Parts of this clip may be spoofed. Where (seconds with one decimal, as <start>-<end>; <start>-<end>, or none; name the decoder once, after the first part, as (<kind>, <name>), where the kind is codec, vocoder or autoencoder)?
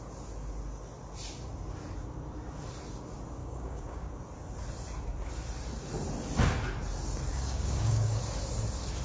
3.4-4.1 (codec, DAC); 7.3-8.2